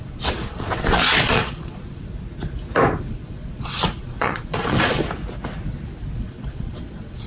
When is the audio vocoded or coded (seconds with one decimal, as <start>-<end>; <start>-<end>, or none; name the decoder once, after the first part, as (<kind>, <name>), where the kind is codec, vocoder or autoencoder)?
0.0-2.1 (vocoder, Vocos); 3.1-5.0; 6.1-7.3